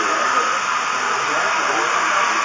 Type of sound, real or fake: fake